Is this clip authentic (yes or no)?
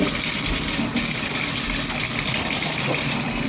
yes